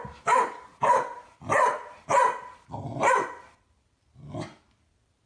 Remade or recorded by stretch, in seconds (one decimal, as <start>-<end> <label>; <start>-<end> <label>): 0.0-5.3 recorded

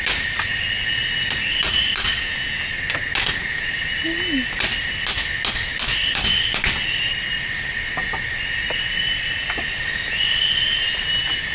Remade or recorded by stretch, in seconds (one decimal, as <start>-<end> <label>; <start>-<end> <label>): 0.0-6.0 recorded; 6.0-10.0 remade; 10.0-11.5 recorded